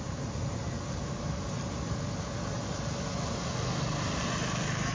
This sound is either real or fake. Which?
real